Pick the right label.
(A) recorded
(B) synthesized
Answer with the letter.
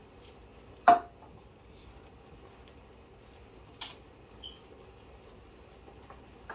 A